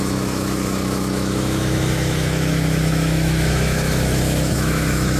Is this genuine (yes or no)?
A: no